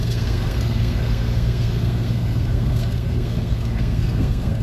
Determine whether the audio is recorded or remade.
remade